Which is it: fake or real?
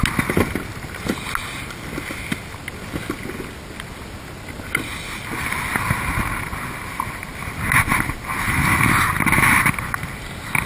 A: real